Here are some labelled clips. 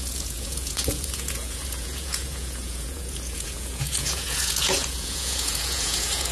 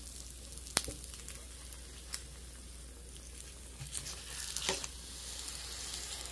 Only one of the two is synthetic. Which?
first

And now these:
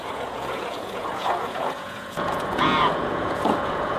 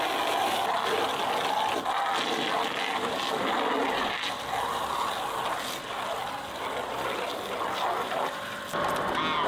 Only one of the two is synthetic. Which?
first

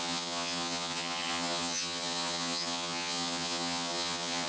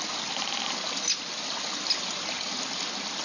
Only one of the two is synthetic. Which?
first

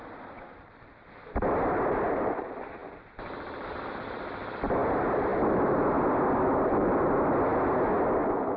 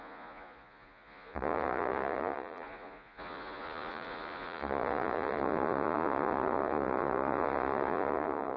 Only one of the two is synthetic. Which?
second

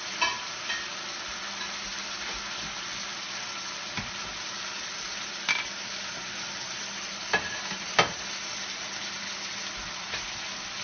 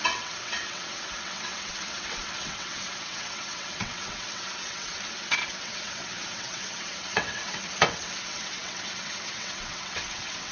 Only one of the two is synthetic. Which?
second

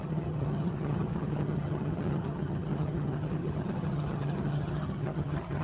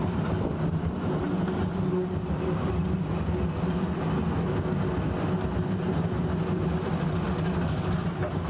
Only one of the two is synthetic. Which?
first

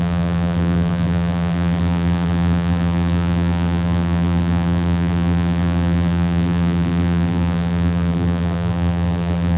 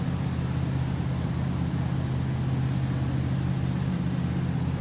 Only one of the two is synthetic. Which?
first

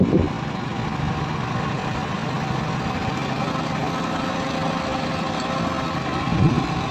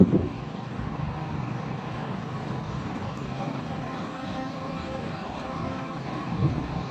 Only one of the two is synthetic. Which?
second